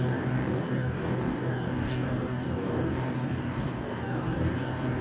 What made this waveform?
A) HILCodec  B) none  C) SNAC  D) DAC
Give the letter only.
D